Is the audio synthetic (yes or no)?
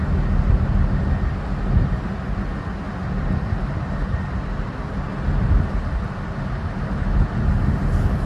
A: no